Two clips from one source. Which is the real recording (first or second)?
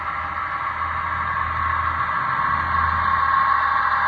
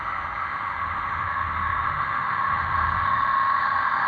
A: first